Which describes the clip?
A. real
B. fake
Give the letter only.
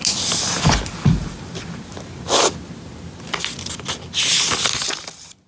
A